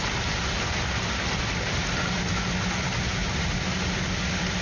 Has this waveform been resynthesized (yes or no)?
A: no